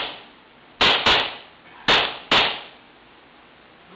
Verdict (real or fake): real